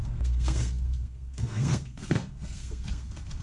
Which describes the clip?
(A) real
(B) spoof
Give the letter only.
B